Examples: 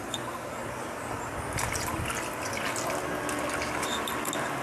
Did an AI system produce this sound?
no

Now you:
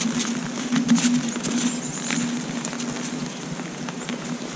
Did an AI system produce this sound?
no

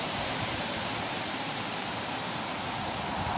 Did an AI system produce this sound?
yes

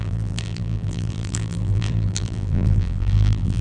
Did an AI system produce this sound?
yes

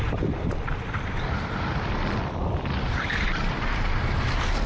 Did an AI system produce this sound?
yes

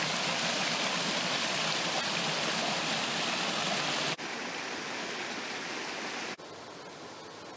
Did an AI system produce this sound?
no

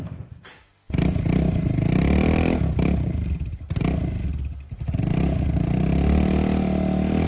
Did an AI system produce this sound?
no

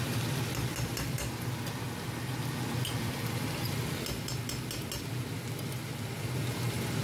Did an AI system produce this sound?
no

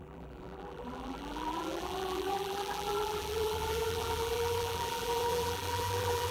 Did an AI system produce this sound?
yes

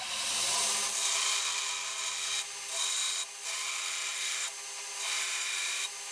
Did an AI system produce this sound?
no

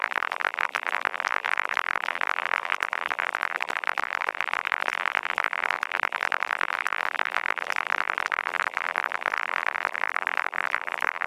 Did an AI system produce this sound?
yes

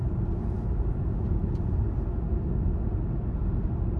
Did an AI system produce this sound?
no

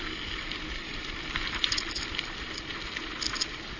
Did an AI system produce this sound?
no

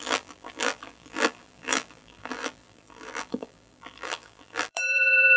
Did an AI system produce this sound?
yes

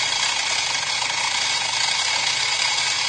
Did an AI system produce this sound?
no